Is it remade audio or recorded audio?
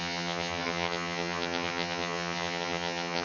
remade